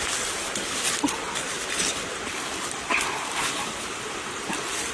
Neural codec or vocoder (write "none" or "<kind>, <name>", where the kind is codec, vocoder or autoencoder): vocoder, BigVGAN v2